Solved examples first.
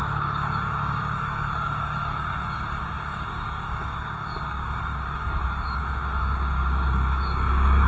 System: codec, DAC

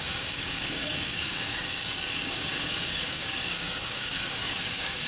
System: codec, DAC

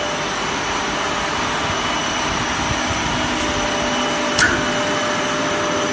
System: none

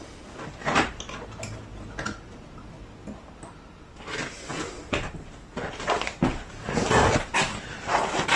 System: none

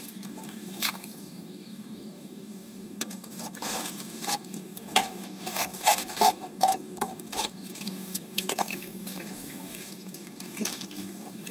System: codec, DAC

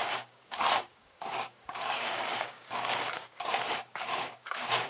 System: codec, DAC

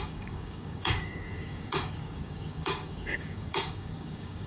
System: codec, DAC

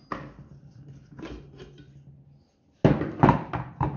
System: none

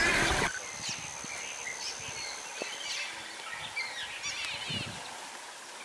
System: none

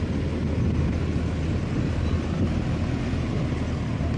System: none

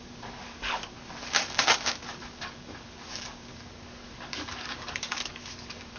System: codec, DAC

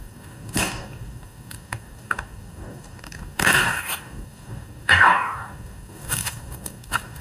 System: codec, DAC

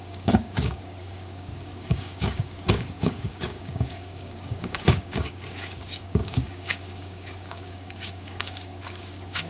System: codec, DAC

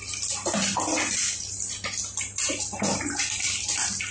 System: none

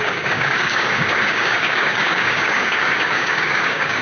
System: codec, DAC